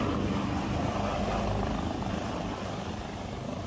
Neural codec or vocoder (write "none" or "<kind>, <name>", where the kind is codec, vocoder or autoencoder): vocoder, BigVGAN v2